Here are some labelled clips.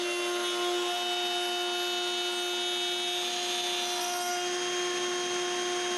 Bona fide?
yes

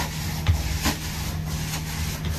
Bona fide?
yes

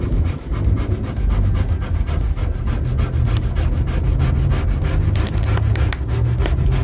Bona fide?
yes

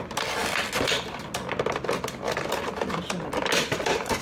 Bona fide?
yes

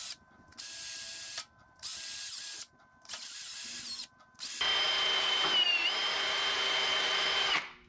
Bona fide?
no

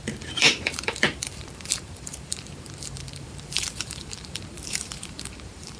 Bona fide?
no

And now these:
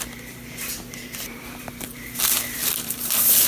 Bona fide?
no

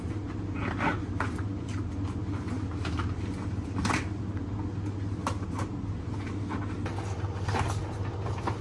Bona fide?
yes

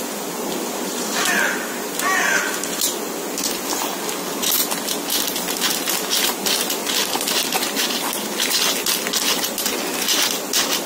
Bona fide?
yes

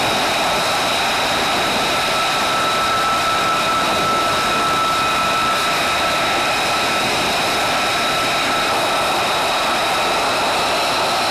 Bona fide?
yes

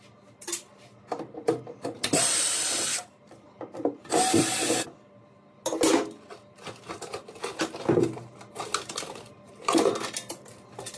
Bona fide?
yes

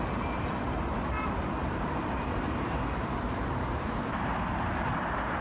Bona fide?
no